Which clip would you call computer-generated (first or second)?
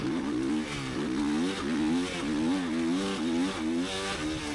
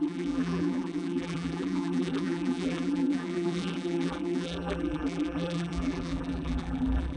second